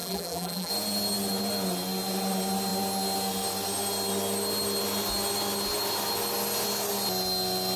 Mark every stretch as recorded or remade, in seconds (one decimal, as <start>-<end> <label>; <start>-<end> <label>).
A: 0.0-0.7 remade; 0.7-7.8 recorded